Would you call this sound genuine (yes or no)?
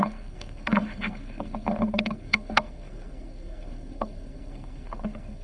no